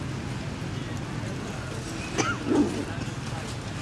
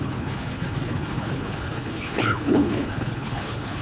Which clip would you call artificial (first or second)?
second